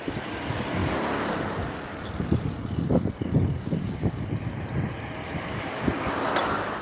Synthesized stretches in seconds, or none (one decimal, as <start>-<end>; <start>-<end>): 3.6-4.2; 5.5-6.1